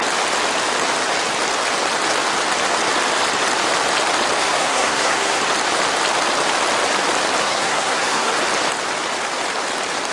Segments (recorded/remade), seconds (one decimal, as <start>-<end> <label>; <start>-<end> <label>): 0.0-4.4 recorded; 4.4-5.4 remade; 5.4-7.4 recorded; 7.4-8.3 remade; 8.3-10.1 recorded